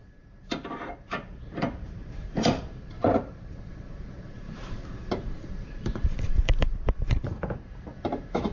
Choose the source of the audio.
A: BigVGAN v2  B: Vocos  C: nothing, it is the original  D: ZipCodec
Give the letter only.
A